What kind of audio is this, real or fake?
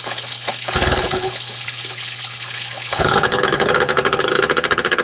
fake